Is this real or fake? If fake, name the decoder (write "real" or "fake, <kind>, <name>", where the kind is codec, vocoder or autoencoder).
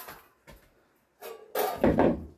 real